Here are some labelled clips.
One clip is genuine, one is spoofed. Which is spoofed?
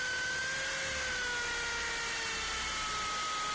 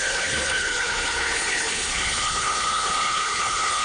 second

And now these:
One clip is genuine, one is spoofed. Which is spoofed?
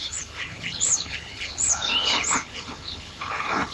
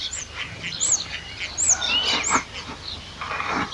first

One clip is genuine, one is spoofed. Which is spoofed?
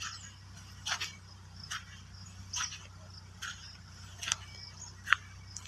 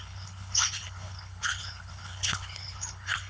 second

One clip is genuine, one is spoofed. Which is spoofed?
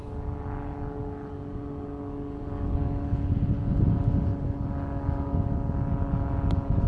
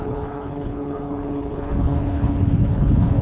second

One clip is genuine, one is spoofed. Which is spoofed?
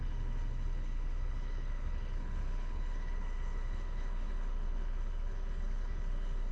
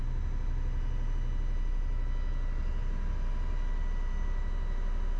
first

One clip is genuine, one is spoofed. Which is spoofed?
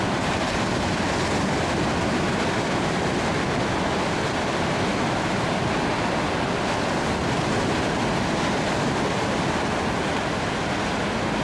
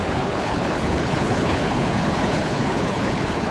second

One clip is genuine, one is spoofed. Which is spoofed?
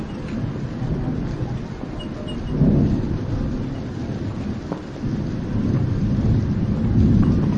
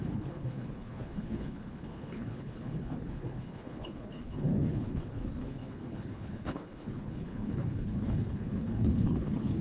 second